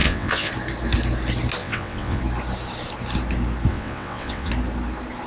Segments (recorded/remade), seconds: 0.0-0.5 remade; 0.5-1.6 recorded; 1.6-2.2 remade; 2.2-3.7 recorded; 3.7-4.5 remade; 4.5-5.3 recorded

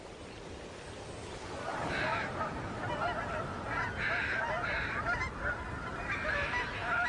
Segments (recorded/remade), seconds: 0.0-1.7 recorded; 1.7-2.9 remade; 2.9-7.1 recorded

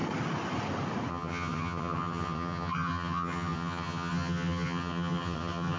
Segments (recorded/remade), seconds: 0.0-1.1 recorded; 1.1-5.8 remade

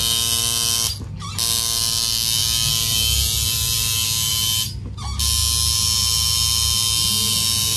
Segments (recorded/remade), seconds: 0.0-7.8 recorded

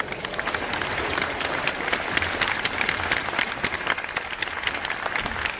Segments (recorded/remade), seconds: 0.0-0.9 recorded; 0.9-1.7 remade; 1.7-5.6 recorded

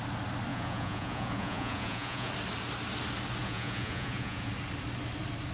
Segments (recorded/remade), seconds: 0.0-0.5 recorded; 0.5-2.3 remade; 2.3-3.4 recorded; 3.4-4.5 remade; 4.5-5.5 recorded

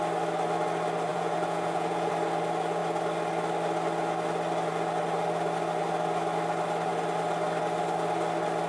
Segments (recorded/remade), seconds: 0.0-1.1 recorded; 1.1-2.1 remade; 2.1-8.7 recorded

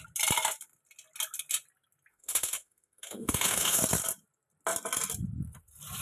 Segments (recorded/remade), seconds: 0.0-2.1 recorded; 2.1-3.8 remade; 3.8-6.0 recorded